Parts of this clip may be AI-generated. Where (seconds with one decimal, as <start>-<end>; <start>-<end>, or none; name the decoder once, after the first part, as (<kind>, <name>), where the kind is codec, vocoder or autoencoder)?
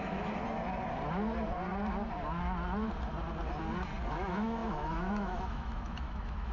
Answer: 0.0-0.4 (autoencoder, DAC-VAE); 4.1-6.5